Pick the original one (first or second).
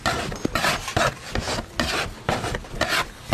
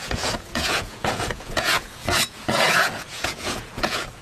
first